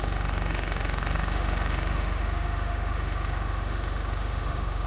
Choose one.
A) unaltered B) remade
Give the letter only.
B